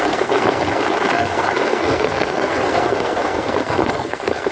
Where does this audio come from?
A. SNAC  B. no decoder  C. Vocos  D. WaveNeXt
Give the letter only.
A